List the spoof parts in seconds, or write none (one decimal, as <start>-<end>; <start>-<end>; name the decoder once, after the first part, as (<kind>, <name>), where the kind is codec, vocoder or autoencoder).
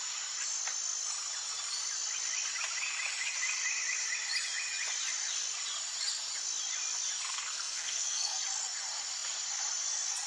7.3-8.4 (codec, SNAC)